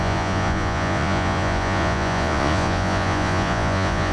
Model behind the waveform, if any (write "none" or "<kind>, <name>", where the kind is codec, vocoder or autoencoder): vocoder, Vocos